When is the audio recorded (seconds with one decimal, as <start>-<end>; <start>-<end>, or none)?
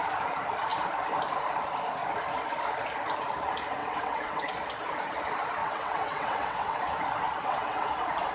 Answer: 0.0-3.8; 4.5-5.6; 6.8-7.4; 7.9-8.3